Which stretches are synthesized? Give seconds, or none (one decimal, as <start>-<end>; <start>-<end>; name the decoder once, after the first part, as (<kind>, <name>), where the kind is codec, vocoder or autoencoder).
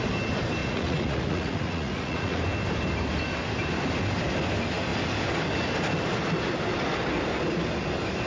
0.6-2.4 (vocoder, Vocos)